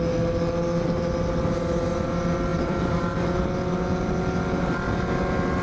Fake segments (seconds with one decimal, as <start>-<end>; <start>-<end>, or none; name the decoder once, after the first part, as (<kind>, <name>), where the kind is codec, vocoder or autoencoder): 2.5-3.0 (vocoder, BigVGAN v2)